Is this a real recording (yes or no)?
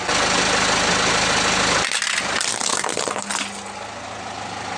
yes